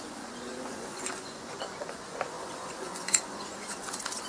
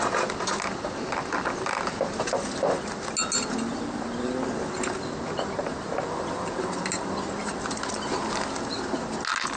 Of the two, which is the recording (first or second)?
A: second